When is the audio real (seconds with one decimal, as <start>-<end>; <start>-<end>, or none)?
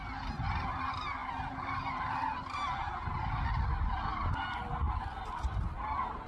0.0-6.3